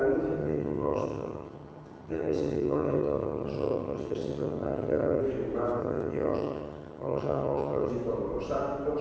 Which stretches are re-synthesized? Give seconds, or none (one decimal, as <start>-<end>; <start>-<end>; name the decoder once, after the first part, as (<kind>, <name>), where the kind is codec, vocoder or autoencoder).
0.4-5.2 (vocoder, HiFi-GAN); 5.8-7.9